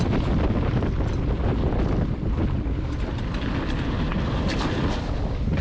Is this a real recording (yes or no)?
yes